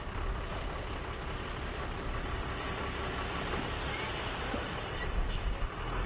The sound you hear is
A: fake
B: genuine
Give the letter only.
B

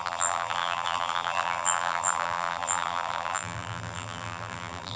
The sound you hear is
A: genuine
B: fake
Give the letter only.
B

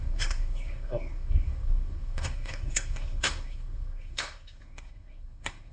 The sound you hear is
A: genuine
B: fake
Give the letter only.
B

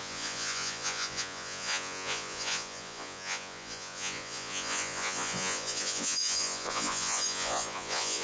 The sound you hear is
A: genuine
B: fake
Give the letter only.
B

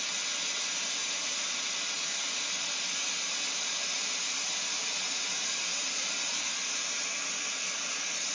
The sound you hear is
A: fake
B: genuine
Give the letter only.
B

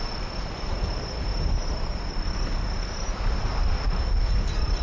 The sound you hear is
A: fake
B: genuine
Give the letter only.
B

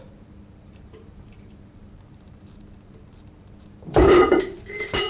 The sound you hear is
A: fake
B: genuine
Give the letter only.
A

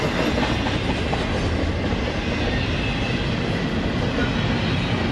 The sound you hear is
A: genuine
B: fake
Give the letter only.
A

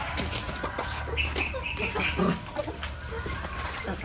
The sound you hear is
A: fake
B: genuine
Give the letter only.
B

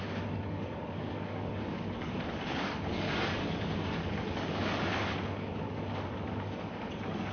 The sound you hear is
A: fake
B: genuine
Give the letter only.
A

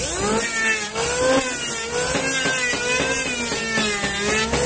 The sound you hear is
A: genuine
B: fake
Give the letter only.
A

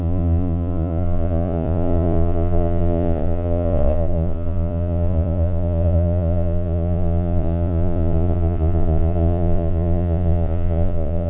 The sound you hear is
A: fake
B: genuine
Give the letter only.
A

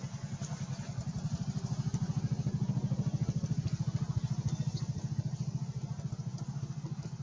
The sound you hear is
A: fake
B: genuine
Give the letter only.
B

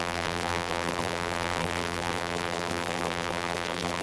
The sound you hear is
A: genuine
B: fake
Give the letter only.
B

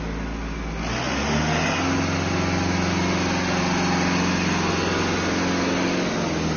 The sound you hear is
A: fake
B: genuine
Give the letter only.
B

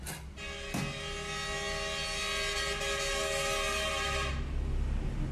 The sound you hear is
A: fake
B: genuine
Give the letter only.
B